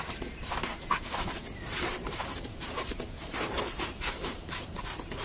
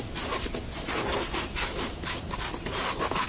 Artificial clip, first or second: first